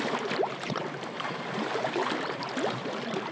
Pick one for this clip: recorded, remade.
remade